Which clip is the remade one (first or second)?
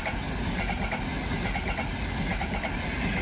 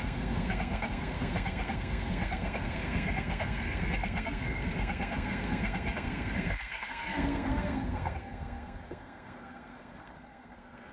second